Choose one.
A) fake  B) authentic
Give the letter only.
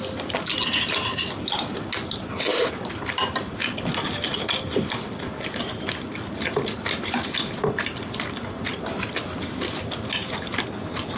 B